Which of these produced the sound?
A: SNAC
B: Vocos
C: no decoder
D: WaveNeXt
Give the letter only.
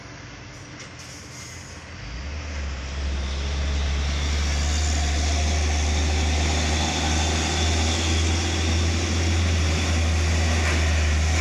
C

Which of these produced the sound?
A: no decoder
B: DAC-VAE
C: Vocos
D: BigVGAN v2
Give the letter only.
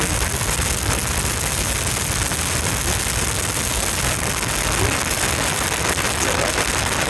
A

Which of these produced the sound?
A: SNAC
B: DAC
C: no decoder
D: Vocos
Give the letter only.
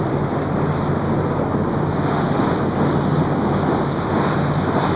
C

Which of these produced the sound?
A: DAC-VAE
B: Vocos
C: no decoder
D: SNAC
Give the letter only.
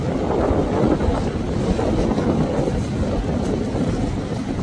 C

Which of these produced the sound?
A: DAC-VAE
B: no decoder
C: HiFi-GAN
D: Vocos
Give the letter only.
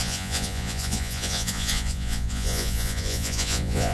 D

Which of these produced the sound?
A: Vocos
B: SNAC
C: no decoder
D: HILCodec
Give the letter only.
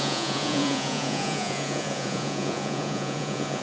A